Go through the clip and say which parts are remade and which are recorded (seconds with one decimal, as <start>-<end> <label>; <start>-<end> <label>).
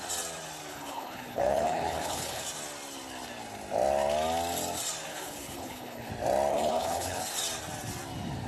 0.0-0.7 recorded; 0.7-2.4 remade; 2.4-5.1 recorded; 5.1-6.1 remade; 6.1-6.5 recorded; 6.5-7.2 remade; 7.2-8.5 recorded